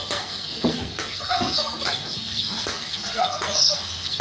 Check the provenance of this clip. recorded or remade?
remade